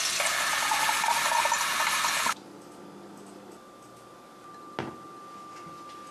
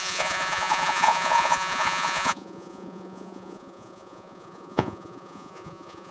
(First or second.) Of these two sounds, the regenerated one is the second